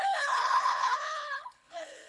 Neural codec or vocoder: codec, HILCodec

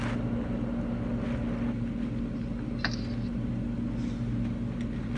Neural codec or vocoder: none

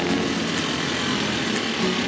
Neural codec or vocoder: none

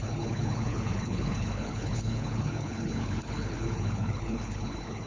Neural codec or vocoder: codec, HILCodec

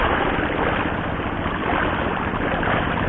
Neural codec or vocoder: none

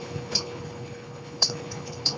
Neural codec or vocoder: codec, HILCodec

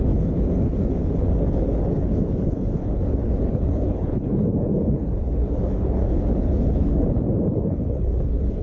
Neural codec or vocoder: codec, HILCodec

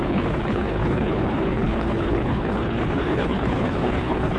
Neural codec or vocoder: codec, HILCodec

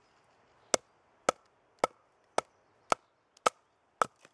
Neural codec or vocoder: none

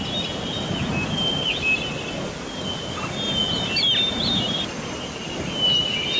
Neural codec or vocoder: none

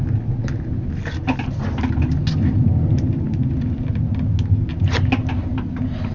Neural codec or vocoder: none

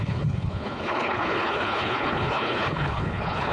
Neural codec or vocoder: codec, HILCodec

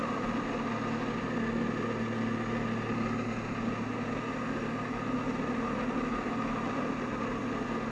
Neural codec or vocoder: none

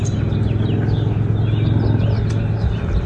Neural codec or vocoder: none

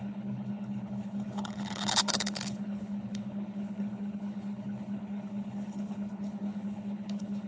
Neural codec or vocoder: codec, HILCodec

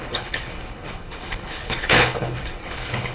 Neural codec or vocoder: codec, HILCodec